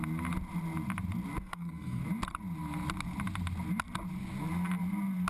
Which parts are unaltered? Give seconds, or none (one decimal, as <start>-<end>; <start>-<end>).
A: 0.0-1.4; 2.0-5.3